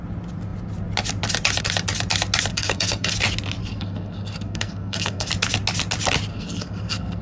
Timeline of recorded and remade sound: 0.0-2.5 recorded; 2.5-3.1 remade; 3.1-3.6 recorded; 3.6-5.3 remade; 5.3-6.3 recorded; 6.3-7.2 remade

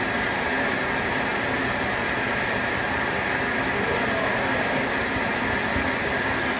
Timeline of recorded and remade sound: 0.0-6.6 recorded